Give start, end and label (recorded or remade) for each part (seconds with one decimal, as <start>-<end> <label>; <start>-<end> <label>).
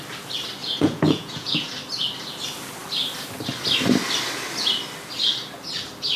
0.0-0.6 recorded; 0.6-1.7 remade; 1.7-6.2 recorded